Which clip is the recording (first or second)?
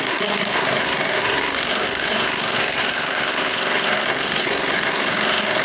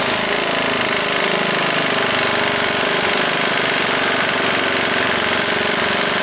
second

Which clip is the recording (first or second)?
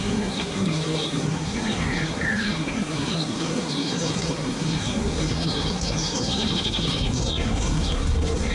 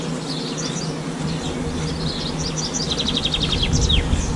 second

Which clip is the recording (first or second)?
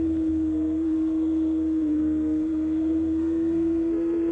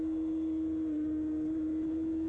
second